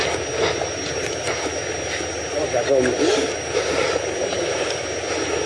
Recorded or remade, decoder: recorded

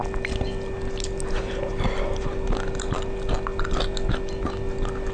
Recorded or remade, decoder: recorded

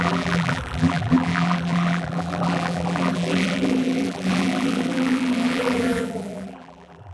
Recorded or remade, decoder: remade, vocoder, BigVGAN v2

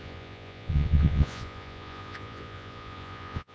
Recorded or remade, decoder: remade, vocoder, Vocos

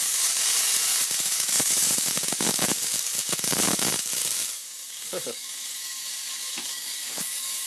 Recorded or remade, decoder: remade, codec, DAC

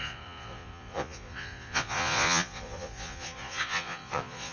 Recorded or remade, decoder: remade, vocoder, Vocos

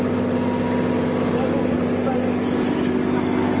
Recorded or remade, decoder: recorded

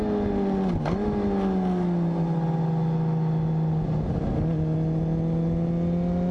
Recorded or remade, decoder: recorded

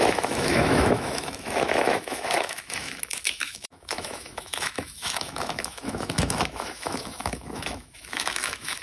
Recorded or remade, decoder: remade, autoencoder, DAC-VAE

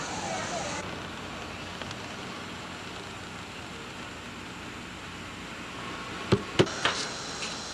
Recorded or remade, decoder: recorded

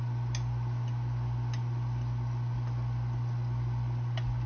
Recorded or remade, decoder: recorded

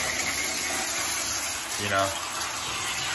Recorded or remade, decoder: recorded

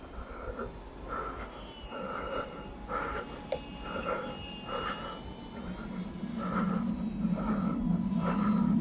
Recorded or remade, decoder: recorded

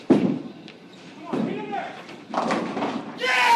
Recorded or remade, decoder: recorded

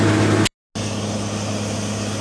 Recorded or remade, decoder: recorded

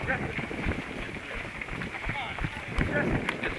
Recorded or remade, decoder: recorded